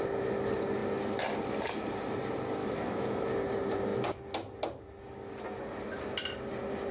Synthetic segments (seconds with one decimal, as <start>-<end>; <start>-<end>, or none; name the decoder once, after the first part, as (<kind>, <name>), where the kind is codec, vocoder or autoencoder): 2.6-3.3 (autoencoder, DAC-VAE)